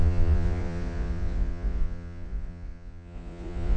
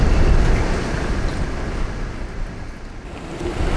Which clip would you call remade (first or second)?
first